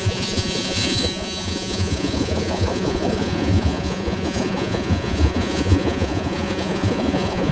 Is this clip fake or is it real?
fake